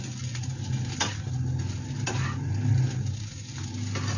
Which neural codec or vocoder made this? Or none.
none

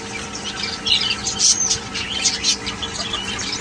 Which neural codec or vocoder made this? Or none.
vocoder, BigVGAN v2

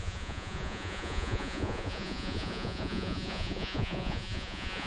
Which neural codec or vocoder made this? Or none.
vocoder, Vocos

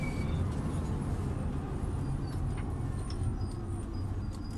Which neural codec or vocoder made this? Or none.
none